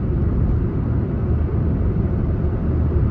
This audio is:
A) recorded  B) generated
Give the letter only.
A